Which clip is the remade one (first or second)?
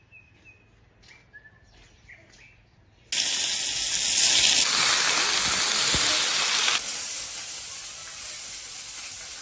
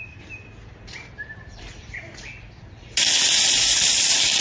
second